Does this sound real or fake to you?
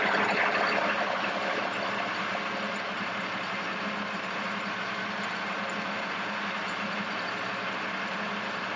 real